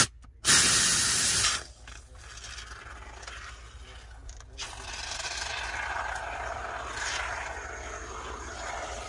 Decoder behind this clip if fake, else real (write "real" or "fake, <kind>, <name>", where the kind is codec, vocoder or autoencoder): real